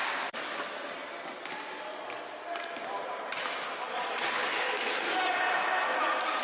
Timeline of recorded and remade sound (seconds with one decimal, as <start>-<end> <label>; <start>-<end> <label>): 0.0-4.4 recorded; 4.4-5.0 remade; 5.0-6.4 recorded